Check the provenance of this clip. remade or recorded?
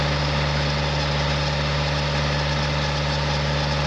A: recorded